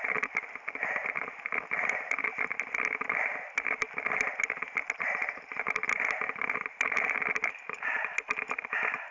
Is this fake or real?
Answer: real